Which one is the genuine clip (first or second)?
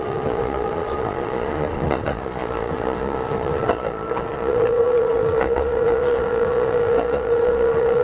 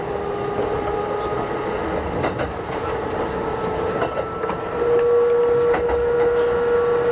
second